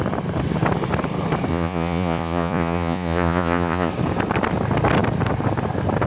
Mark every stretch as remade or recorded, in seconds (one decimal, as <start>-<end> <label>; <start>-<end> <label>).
0.0-1.5 recorded; 1.5-3.9 remade; 3.9-6.1 recorded